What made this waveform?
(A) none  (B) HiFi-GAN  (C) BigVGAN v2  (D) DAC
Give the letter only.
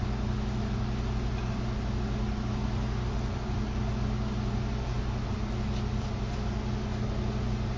A